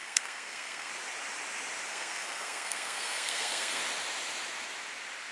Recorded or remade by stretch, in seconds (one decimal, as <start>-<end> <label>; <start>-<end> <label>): 0.0-0.9 remade; 0.9-1.9 recorded; 1.9-3.8 remade; 3.8-5.3 recorded